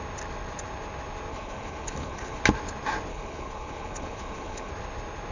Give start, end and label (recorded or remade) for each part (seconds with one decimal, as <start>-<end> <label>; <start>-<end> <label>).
0.0-1.3 recorded; 1.3-2.4 remade; 2.4-3.1 recorded; 3.1-4.7 remade; 4.7-5.3 recorded